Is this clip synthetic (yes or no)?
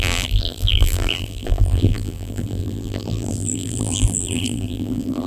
yes